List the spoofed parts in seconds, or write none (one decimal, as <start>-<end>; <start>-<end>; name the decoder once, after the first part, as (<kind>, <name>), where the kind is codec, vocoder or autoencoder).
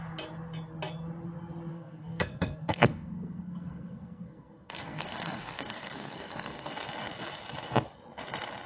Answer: 1.7-6.7 (codec, SNAC)